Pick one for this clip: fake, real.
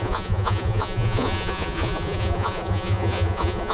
fake